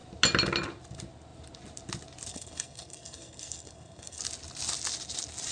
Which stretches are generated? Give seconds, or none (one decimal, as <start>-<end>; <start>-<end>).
2.3-4.2